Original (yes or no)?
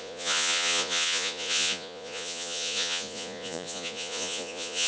no